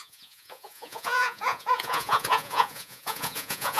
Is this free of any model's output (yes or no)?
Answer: no